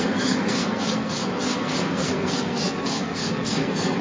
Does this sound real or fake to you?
fake